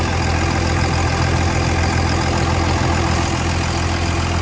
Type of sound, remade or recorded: recorded